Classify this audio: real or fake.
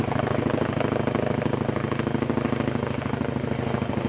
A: real